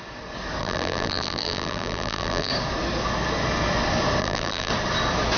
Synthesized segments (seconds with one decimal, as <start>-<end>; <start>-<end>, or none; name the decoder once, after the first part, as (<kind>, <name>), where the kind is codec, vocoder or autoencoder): 0.6-2.5 (vocoder, BigVGAN v2); 4.2-4.7